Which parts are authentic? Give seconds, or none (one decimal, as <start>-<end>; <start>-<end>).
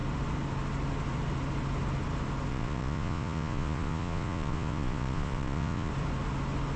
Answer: 0.0-2.5; 5.9-6.8